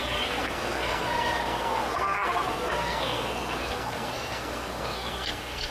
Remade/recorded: remade